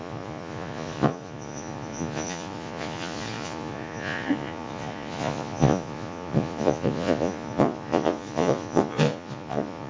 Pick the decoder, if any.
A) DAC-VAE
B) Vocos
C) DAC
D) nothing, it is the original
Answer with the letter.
B